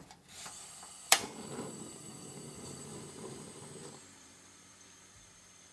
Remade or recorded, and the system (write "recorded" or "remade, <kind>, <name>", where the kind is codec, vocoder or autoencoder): remade, vocoder, BigVGAN v2